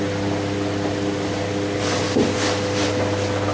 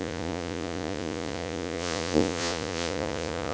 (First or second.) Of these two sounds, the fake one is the second